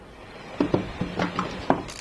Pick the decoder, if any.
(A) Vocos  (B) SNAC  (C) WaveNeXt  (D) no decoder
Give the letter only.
D